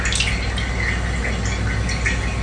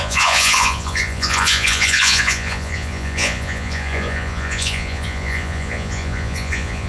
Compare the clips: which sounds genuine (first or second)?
first